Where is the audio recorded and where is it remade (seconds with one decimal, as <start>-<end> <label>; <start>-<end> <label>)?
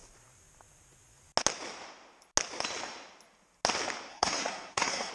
0.0-4.1 recorded; 4.1-5.1 remade